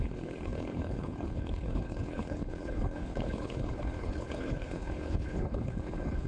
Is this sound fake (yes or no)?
yes